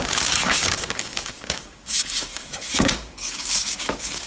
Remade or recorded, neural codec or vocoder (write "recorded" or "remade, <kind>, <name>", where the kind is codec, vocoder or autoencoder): remade, codec, DAC